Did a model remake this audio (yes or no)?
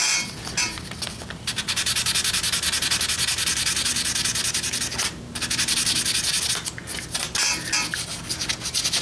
no